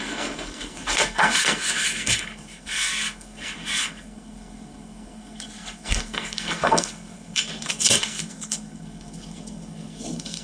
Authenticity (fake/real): fake